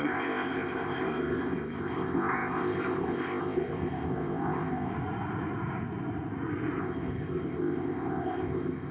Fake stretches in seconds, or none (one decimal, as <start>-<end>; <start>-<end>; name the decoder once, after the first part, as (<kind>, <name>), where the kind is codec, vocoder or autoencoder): 0.0-4.9 (codec, ZipCodec); 6.8-8.9